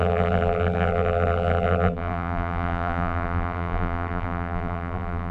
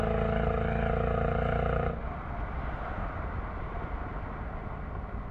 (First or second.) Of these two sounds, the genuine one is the second